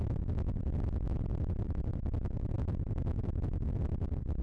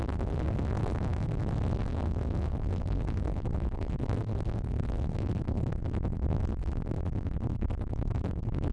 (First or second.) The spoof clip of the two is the second